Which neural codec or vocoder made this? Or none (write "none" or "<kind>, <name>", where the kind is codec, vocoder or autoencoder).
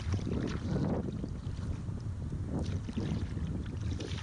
vocoder, BigVGAN v2